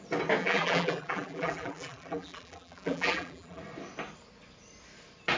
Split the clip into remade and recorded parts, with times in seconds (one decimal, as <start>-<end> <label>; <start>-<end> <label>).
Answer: 0.0-0.4 recorded; 0.4-3.6 remade; 3.6-5.4 recorded

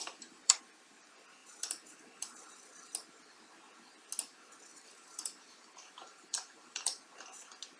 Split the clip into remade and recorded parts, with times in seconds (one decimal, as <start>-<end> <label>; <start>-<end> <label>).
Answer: 0.0-0.6 remade; 0.6-1.4 recorded; 1.4-2.5 remade; 2.5-4.7 recorded; 4.7-7.0 remade; 7.0-7.8 recorded

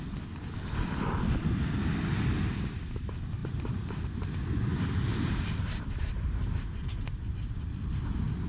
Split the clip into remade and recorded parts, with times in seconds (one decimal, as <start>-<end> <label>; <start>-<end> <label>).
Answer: 0.0-3.4 recorded; 3.4-5.9 remade; 5.9-8.5 recorded